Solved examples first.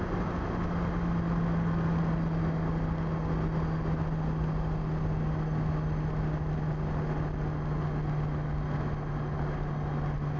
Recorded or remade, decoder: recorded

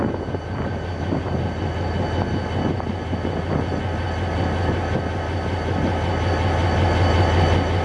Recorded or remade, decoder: recorded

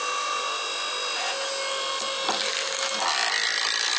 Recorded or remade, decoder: recorded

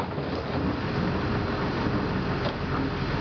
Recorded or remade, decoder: recorded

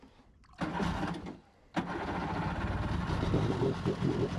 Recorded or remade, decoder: recorded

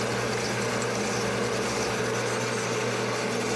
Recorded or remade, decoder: recorded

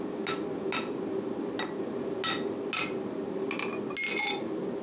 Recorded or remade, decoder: recorded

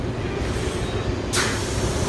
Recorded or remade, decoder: recorded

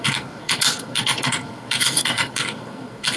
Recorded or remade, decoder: remade, codec, SNAC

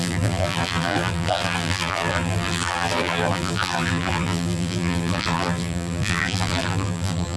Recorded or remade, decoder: remade, vocoder, BigVGAN v2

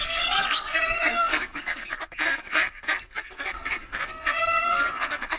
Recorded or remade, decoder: remade, codec, SNAC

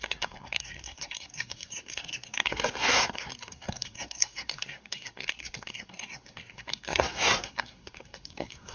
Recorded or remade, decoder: remade, codec, SNAC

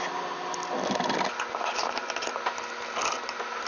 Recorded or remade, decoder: recorded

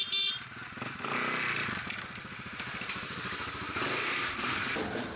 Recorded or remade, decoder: recorded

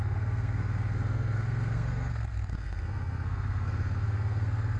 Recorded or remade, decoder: remade, codec, SNAC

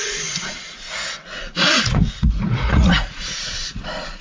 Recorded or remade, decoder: remade, vocoder, Vocos